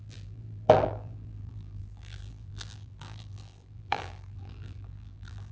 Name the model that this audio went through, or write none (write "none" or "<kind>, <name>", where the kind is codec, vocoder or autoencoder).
vocoder, BigVGAN v2